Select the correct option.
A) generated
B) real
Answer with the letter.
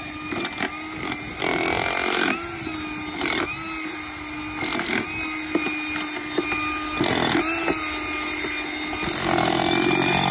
B